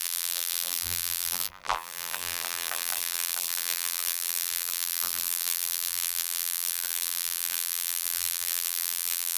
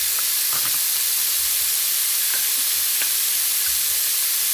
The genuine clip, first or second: second